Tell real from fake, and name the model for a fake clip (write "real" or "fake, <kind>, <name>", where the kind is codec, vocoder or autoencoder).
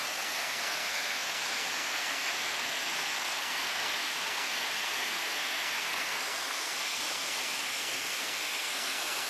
fake, codec, SNAC